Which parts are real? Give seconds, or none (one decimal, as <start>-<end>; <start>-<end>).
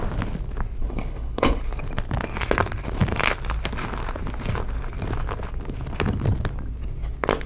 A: 0.0-0.8; 1.6-7.5